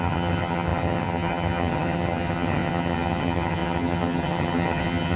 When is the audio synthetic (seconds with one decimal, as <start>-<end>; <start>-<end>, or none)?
0.0-5.2